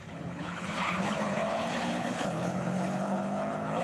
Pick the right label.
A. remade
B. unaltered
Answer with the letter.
A